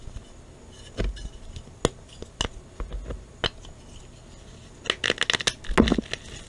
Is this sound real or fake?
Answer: real